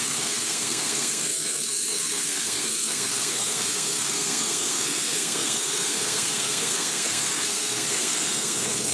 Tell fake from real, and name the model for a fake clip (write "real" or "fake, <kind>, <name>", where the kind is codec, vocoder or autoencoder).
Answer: fake, codec, SNAC